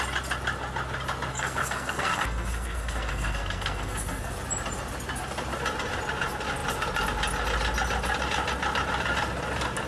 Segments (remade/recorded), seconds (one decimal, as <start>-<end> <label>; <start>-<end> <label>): 0.0-1.3 recorded; 1.3-4.3 remade; 4.3-9.9 recorded